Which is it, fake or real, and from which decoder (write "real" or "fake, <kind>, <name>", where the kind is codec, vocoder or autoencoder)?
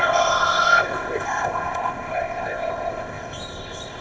fake, codec, ZipCodec